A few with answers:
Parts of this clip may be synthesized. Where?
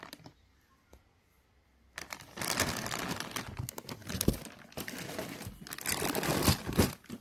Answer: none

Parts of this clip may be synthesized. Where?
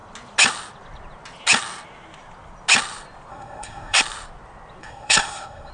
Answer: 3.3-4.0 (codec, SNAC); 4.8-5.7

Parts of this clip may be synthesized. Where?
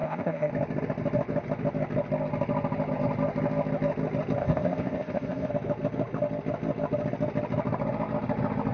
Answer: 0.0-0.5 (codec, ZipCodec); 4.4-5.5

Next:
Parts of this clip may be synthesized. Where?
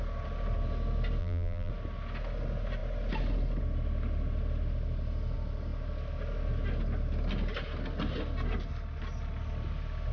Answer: 1.2-1.7 (vocoder, BigVGAN v2)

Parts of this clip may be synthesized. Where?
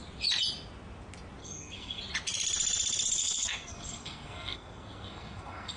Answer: 1.4-2.0 (codec, SNAC); 3.2-5.8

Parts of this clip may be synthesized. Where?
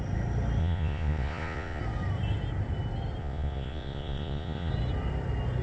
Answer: 0.6-1.8 (vocoder, Vocos); 3.2-4.7